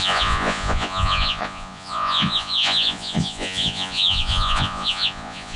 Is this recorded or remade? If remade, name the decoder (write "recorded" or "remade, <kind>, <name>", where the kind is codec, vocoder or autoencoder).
remade, vocoder, Vocos